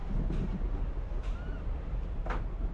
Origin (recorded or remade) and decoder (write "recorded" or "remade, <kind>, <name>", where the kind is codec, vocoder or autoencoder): recorded